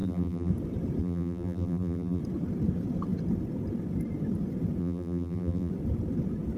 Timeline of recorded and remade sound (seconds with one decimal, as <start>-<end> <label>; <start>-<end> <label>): 0.0-0.5 remade; 0.5-1.0 recorded; 1.0-2.2 remade; 2.2-4.8 recorded; 4.8-5.7 remade; 5.7-6.6 recorded